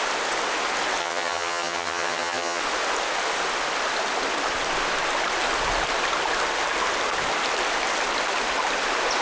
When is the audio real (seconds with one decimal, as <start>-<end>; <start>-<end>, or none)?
0.0-1.0; 2.6-9.2